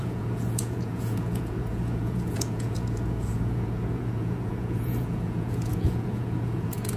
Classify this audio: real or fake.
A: fake